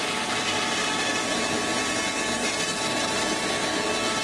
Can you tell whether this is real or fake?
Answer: real